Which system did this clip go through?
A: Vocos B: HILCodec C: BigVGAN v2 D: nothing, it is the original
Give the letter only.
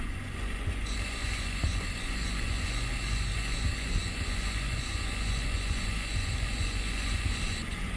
A